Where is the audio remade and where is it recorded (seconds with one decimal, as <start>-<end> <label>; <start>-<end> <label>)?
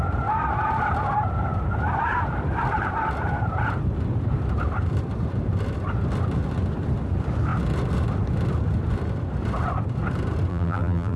0.0-10.5 recorded; 10.5-11.2 remade